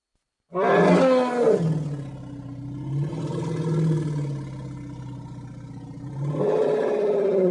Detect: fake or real real